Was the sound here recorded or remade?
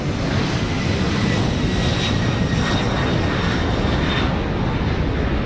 recorded